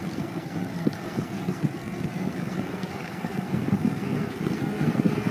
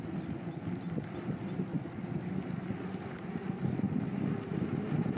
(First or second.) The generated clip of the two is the first